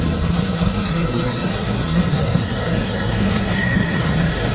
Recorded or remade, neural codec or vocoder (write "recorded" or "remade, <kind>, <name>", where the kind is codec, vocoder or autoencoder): remade, codec, SNAC